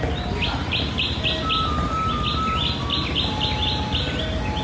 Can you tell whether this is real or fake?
real